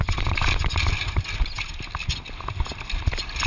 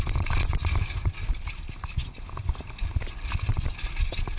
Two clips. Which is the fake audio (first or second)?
first